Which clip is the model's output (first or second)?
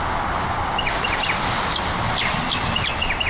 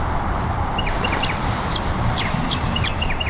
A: second